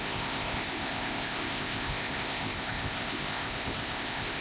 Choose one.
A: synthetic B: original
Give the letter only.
A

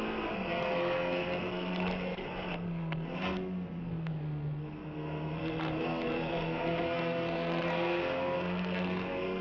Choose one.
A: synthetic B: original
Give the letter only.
A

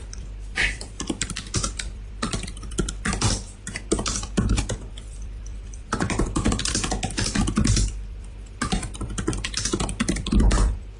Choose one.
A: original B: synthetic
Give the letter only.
B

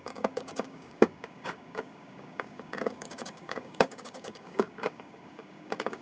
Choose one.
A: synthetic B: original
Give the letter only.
A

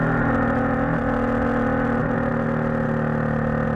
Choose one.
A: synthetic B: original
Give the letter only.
B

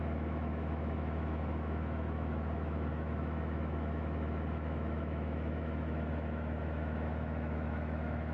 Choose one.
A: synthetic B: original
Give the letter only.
A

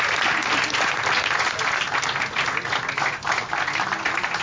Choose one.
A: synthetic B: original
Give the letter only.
B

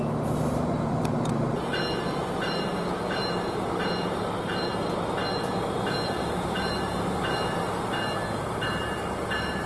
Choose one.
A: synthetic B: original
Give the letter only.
A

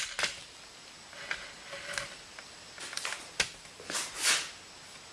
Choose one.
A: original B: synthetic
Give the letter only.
A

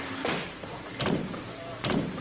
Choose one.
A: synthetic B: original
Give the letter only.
A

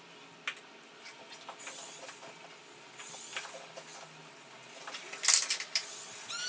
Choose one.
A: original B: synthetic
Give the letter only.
A